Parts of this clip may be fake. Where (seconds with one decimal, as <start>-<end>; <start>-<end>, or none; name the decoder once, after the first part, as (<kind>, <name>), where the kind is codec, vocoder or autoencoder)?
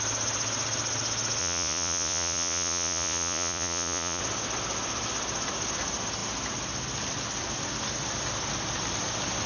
1.4-4.2 (vocoder, Vocos)